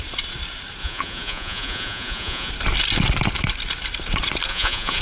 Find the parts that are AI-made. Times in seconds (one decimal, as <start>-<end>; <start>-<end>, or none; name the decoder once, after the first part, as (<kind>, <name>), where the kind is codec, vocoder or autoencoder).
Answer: 0.8-2.5 (vocoder, Vocos); 4.5-5.0